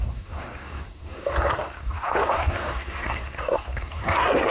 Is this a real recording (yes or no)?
no